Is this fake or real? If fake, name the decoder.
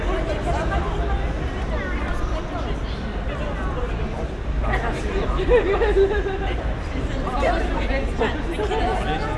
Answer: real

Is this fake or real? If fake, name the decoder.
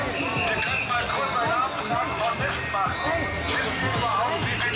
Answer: real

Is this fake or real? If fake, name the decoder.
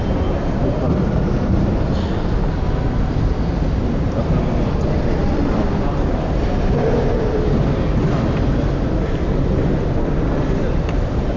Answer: real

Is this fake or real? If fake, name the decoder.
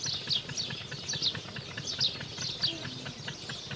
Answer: real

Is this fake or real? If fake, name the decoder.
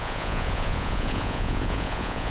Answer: fake, vocoder, Vocos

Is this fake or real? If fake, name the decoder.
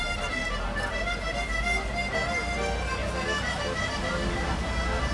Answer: real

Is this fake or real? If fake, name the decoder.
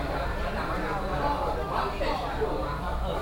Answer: fake, vocoder, BigVGAN v2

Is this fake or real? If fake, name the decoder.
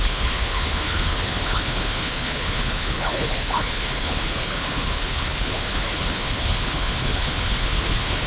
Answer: fake, codec, HILCodec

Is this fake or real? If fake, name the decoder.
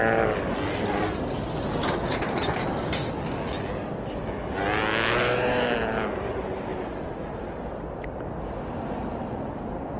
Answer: real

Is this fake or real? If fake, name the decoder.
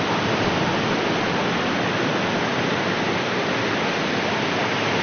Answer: real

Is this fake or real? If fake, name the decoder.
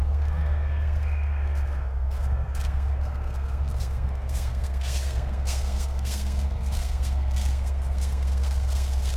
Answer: fake, codec, SNAC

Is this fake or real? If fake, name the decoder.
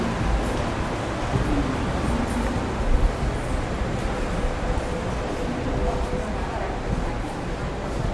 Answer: real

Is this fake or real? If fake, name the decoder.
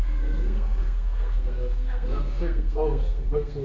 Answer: fake, codec, SNAC